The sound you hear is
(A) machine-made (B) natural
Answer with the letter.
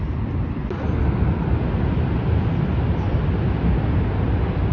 B